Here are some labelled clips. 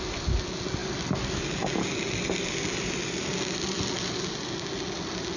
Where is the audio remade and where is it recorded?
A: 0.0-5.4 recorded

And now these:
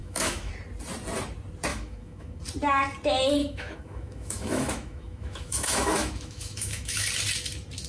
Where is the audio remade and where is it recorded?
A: 0.0-0.5 remade; 0.5-1.7 recorded; 1.7-2.4 remade; 2.4-3.4 recorded; 3.4-7.1 remade; 7.1-7.9 recorded

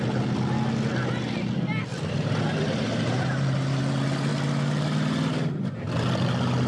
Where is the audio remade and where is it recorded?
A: 0.0-1.9 recorded; 1.9-3.8 remade; 3.8-6.7 recorded

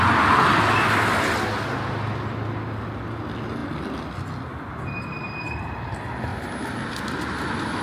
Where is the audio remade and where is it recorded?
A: 0.0-7.8 recorded

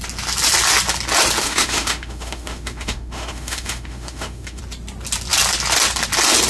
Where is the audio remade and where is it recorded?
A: 0.0-1.4 recorded; 1.4-4.6 remade; 4.6-6.5 recorded

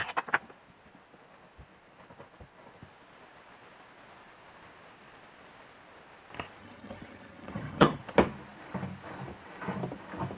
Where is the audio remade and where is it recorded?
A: 0.0-6.6 recorded; 6.6-8.0 remade; 8.0-10.4 recorded

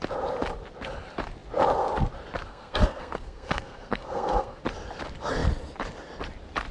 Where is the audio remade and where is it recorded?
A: 0.0-2.5 recorded; 2.5-4.6 remade; 4.6-6.7 recorded

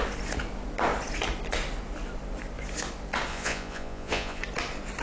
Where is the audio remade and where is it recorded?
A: 0.0-3.3 recorded; 3.3-4.4 remade; 4.4-5.0 recorded